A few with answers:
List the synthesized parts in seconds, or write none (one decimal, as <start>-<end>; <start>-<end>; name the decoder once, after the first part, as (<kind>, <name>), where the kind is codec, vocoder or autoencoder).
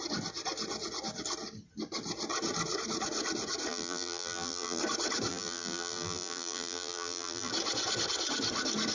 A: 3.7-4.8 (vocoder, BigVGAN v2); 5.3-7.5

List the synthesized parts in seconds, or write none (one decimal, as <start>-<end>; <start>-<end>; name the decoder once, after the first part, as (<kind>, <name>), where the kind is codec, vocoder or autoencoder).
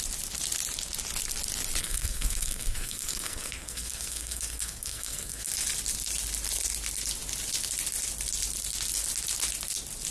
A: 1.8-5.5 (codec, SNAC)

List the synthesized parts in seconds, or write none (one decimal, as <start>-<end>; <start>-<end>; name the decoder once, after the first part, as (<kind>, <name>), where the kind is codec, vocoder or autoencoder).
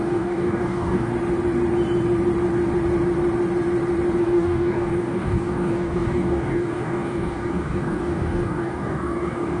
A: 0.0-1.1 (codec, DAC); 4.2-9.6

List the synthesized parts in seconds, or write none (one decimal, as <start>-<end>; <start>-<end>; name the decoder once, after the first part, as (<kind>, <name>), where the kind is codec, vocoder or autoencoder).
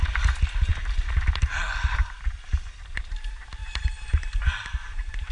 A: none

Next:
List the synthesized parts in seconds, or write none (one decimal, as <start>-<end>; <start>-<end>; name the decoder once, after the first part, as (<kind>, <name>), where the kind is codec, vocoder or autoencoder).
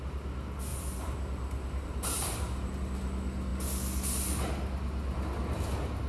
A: 0.7-2.7 (vocoder, BigVGAN v2)